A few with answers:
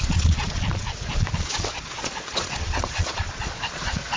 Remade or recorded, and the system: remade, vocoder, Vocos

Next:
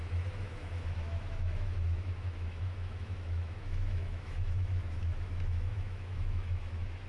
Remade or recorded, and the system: remade, autoencoder, DAC-VAE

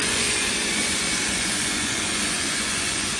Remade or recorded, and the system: remade, vocoder, Vocos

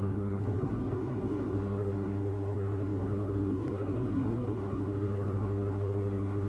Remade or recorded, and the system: remade, codec, SNAC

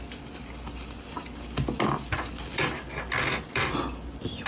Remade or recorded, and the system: recorded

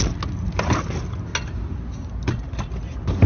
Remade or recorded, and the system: recorded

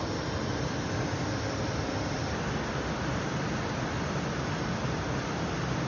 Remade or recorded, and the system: recorded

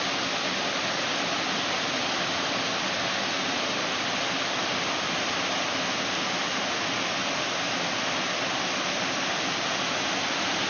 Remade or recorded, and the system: recorded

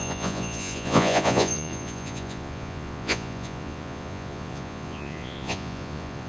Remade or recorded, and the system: remade, vocoder, Vocos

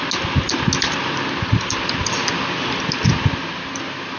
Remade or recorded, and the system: recorded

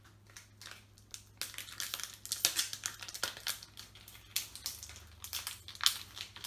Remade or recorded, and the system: recorded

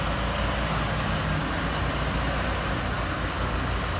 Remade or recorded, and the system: recorded